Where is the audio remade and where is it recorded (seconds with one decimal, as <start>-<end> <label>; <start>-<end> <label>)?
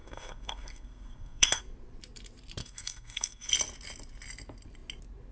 0.0-1.6 remade; 1.6-2.6 recorded; 2.6-3.5 remade; 3.5-5.3 recorded